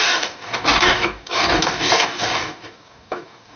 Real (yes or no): no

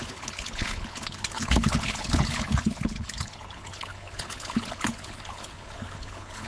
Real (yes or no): no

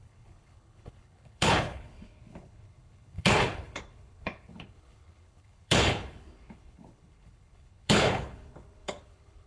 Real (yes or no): no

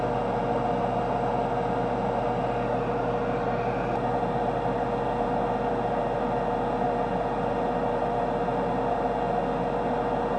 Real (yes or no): yes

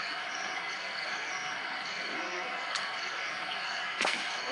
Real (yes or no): no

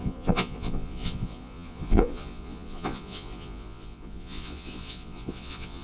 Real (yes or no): no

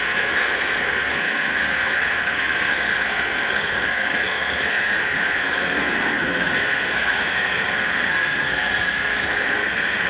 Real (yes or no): no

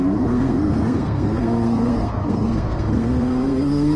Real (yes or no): no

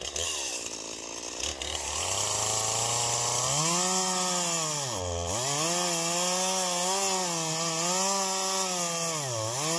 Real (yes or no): yes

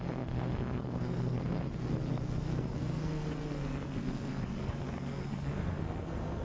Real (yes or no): no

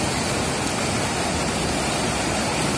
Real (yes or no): yes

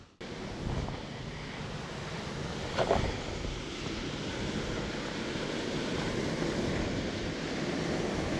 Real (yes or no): yes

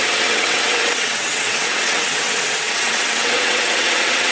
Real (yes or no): no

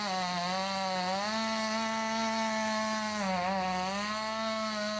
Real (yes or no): yes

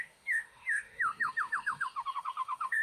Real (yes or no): no